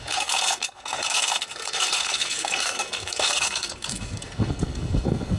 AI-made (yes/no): yes